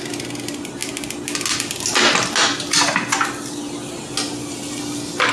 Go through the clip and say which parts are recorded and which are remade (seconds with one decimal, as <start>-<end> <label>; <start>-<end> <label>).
0.0-5.3 recorded